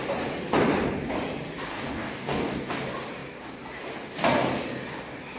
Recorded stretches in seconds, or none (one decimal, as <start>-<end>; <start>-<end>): 0.0-1.7; 2.8-5.4